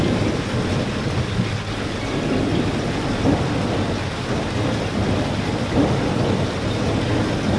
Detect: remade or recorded recorded